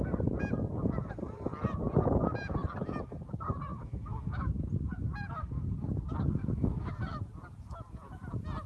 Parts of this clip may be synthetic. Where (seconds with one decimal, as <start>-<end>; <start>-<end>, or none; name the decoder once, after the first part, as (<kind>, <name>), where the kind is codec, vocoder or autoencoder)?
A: 3.7-4.5 (autoencoder, DAC-VAE); 6.4-6.9